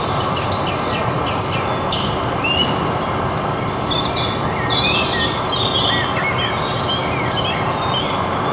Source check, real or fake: real